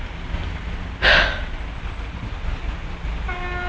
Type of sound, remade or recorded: recorded